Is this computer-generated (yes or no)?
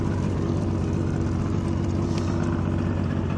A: no